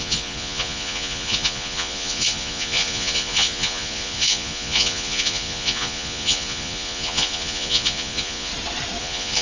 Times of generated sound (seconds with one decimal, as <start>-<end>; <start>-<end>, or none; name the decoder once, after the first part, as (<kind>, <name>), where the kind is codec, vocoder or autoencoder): 0.0-8.5 (vocoder, Vocos); 9.0-9.4